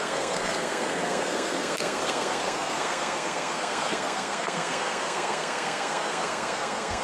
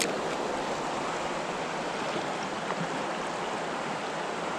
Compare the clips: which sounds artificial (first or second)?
first